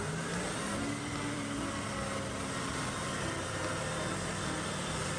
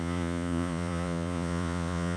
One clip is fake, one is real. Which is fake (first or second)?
second